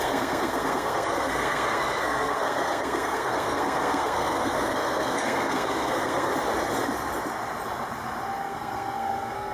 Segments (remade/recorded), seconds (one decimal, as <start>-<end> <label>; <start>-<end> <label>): 0.0-6.3 remade; 6.3-8.4 recorded; 8.4-9.5 remade